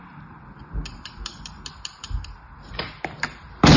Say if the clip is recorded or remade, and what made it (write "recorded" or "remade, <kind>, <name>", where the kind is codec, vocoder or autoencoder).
recorded